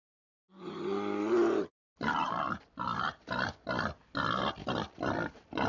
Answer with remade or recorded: recorded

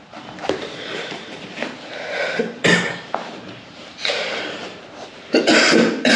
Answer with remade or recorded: remade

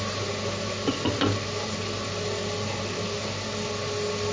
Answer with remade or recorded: recorded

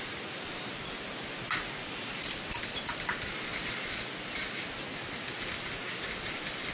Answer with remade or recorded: recorded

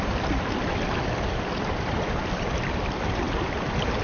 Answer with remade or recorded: recorded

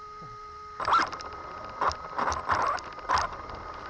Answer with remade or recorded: remade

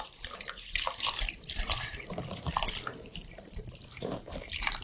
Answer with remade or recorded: remade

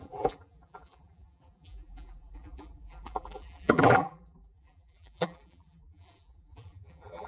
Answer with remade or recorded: remade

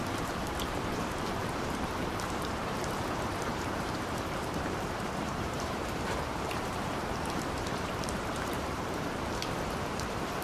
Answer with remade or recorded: remade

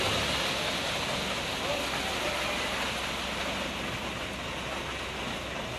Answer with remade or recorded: recorded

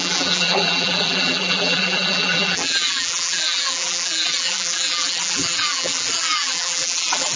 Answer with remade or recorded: remade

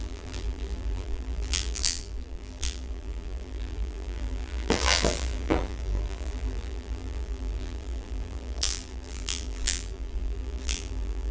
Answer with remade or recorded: remade